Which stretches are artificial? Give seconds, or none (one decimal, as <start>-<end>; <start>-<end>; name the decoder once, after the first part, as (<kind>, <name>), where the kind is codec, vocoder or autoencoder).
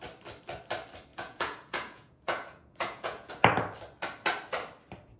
1.1-3.3 (vocoder, Vocos)